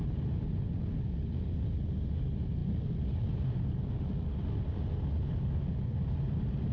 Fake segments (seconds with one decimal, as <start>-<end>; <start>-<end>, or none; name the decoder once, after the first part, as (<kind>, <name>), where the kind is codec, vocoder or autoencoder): none